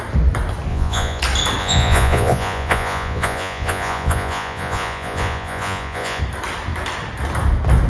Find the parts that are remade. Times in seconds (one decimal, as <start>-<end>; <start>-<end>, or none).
0.7-1.2; 1.6-6.2